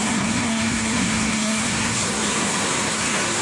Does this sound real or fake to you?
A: fake